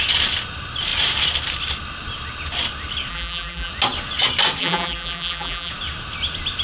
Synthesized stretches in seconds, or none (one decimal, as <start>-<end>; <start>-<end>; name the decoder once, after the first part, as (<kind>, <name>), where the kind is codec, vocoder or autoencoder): 3.1-3.7 (vocoder, BigVGAN v2); 4.6-5.7